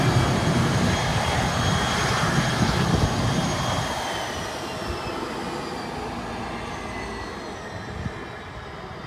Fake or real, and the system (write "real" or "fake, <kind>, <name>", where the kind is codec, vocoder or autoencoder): real